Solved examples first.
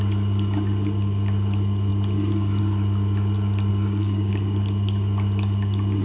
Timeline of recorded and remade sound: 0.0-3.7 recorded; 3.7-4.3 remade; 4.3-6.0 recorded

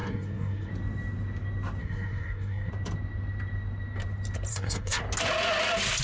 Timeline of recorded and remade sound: 0.0-0.7 remade; 0.7-1.8 recorded; 1.8-2.7 remade; 2.7-4.5 recorded; 4.5-5.0 remade; 5.0-6.0 recorded

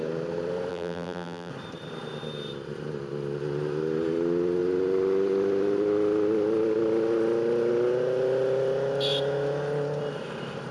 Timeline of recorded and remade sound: 0.0-0.7 recorded; 0.7-1.5 remade; 1.5-10.7 recorded

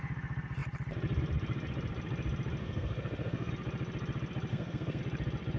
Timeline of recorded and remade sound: 0.0-2.6 recorded; 2.6-3.5 remade; 3.5-4.5 recorded; 4.5-5.0 remade; 5.0-5.6 recorded

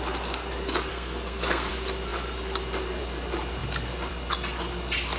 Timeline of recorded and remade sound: 0.0-0.9 recorded; 0.9-1.7 remade; 1.7-5.2 recorded

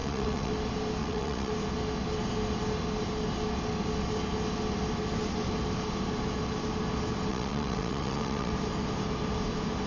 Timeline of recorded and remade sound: 0.0-0.5 remade; 0.5-1.0 recorded; 1.0-1.5 remade; 1.5-7.3 recorded; 7.3-8.5 remade; 8.5-9.9 recorded